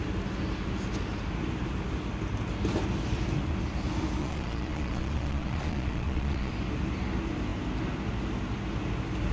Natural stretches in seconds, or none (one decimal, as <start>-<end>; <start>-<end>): 0.0-4.2; 6.5-9.3